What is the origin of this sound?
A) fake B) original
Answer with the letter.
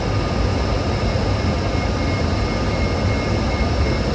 B